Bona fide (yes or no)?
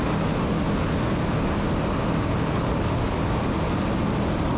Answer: yes